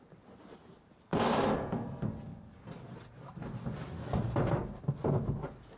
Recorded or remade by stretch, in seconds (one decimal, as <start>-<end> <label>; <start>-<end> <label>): 0.0-5.8 recorded